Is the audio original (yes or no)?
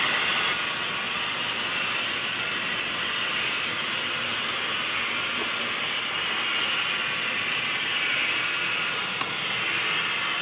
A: yes